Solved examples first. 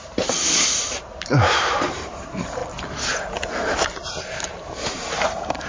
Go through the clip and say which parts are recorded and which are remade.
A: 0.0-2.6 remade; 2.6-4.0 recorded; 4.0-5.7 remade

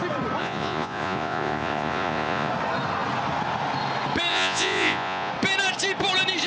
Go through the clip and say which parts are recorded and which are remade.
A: 0.0-0.4 recorded; 0.4-2.5 remade; 2.5-4.3 recorded; 4.3-5.3 remade; 5.3-6.5 recorded

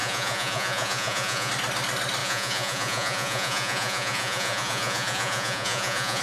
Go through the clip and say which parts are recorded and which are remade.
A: 0.0-1.5 remade; 1.5-2.2 recorded; 2.2-6.2 remade

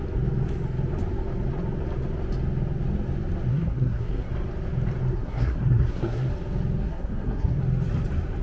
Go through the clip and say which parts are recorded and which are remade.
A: 0.0-3.5 recorded; 3.5-4.3 remade; 4.3-5.1 recorded; 5.1-6.3 remade; 6.3-6.8 recorded; 6.8-7.6 remade; 7.6-8.4 recorded

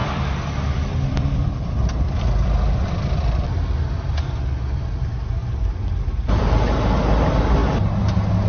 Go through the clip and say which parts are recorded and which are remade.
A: 0.0-3.4 remade; 3.4-5.4 recorded; 5.4-6.5 remade; 6.5-8.5 recorded

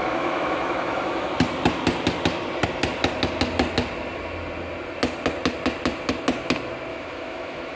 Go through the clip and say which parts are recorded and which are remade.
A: 0.0-1.3 remade; 1.3-6.9 recorded; 6.9-7.8 remade

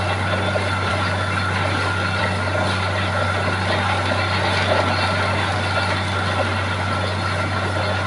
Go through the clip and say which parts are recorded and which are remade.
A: 0.0-8.1 recorded

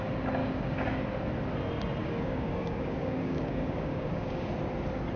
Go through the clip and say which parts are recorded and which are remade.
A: 0.0-0.4 recorded; 0.4-1.0 remade; 1.0-2.0 recorded; 2.0-4.5 remade; 4.5-5.2 recorded